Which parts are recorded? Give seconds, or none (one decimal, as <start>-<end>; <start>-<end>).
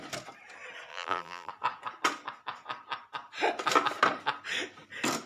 0.0-0.9; 1.5-5.3